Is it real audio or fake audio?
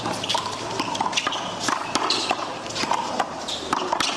fake